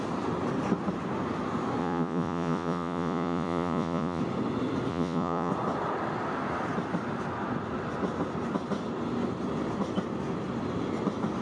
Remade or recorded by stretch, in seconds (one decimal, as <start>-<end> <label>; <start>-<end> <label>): 0.0-1.8 recorded; 1.8-4.2 remade; 4.2-4.9 recorded; 4.9-5.5 remade; 5.5-11.4 recorded